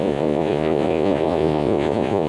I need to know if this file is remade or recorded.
remade